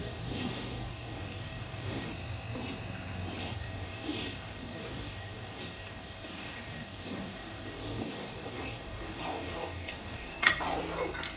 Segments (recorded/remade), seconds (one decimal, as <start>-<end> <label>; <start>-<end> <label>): 0.0-2.1 remade; 2.1-3.4 recorded; 3.4-10.5 remade; 10.5-11.4 recorded